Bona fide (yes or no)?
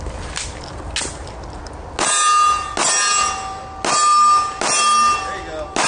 yes